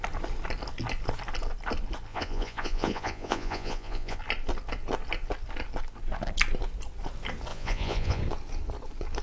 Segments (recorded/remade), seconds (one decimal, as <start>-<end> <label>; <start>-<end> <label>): 0.0-2.1 recorded; 2.1-4.2 remade; 4.2-7.5 recorded; 7.5-8.2 remade; 8.2-9.2 recorded